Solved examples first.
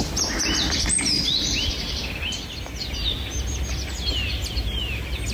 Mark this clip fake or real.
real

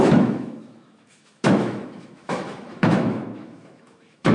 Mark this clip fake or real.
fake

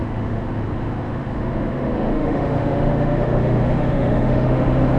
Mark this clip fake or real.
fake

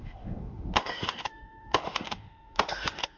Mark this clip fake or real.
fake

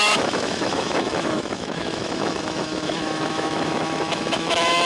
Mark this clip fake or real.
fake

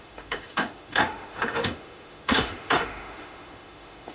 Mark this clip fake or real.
fake